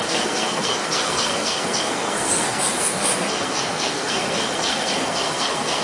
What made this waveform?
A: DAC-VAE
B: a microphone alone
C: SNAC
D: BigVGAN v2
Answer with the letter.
C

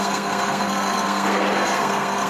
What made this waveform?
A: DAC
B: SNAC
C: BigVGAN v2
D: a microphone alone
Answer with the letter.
B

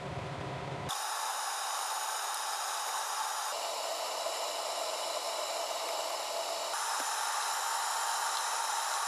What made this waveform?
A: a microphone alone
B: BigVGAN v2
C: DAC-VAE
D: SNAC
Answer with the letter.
A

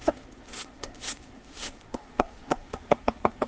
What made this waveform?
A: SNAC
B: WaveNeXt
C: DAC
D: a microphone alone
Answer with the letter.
A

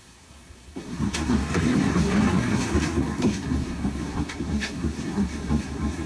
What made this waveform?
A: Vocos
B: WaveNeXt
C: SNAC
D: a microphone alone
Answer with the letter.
C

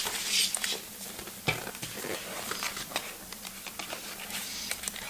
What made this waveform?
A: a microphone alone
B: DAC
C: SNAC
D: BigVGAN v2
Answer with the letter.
A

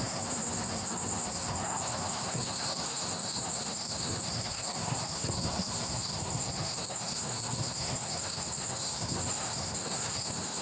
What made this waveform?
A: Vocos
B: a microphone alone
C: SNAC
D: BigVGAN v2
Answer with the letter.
C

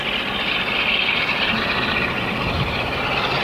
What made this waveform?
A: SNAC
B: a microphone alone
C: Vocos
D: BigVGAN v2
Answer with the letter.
B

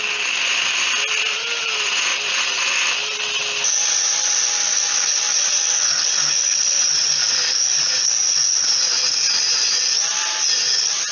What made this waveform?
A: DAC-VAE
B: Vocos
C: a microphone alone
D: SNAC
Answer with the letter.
C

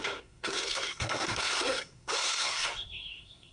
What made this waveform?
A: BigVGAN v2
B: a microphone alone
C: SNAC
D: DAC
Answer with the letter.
C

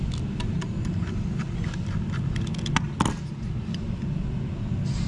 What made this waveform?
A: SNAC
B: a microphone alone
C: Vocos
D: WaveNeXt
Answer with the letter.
B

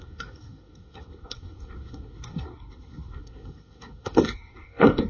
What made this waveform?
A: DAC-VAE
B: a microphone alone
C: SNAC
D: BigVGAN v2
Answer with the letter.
C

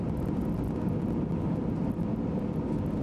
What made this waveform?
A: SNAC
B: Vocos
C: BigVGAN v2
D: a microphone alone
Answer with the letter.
D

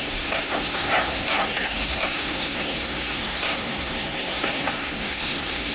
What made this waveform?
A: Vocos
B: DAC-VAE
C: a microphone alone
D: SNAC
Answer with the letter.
D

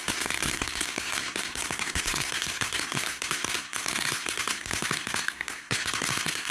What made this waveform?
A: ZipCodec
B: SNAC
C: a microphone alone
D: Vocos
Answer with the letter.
B